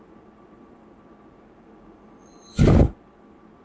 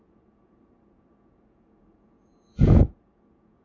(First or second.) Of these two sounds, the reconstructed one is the second